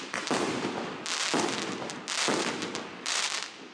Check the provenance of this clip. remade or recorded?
recorded